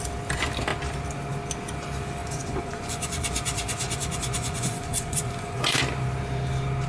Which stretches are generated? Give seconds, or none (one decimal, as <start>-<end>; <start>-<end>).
2.2-5.8